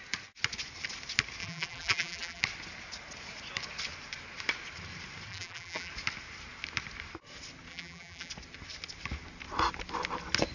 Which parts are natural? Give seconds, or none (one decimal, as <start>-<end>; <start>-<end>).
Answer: 0.0-1.4; 2.4-5.3; 5.9-7.7; 8.3-10.5